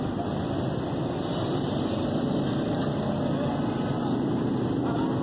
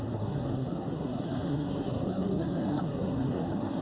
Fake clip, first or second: second